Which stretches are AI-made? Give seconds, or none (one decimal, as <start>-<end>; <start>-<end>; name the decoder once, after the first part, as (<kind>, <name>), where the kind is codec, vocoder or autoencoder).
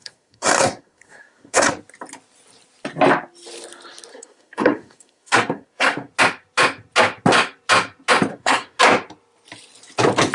0.0-1.7 (codec, SNAC); 4.1-6.1; 8.3-8.8